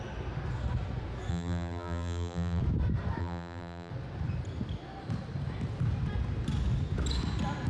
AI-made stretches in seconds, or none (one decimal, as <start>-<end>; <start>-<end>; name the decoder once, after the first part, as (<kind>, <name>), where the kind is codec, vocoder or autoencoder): 1.3-2.6 (vocoder, BigVGAN v2); 3.2-3.9